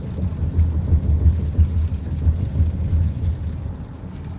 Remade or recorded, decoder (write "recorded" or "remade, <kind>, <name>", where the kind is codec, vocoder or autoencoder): recorded